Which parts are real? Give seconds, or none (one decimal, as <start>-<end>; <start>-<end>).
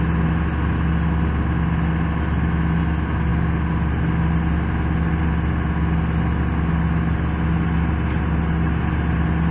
0.0-9.5